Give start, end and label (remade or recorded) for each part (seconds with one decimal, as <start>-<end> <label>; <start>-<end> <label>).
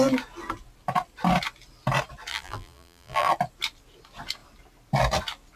0.0-2.3 recorded; 2.3-3.3 remade; 3.3-5.6 recorded